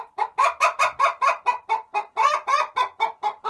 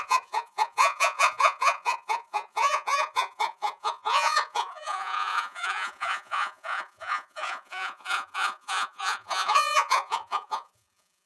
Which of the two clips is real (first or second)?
first